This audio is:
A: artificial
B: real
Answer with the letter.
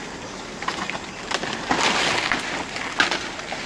B